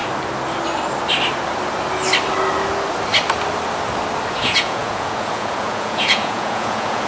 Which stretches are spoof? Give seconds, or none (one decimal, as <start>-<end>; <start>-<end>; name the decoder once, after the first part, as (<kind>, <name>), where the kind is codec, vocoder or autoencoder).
4.3-7.1 (vocoder, Vocos)